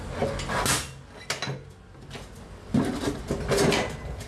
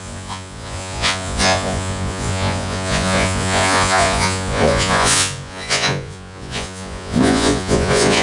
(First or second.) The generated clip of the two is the second